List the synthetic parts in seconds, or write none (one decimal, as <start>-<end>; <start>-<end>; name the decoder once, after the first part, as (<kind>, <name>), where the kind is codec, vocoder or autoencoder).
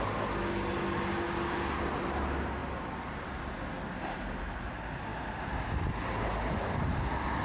none